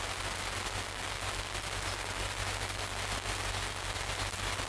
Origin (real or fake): real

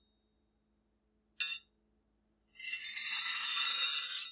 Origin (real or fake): real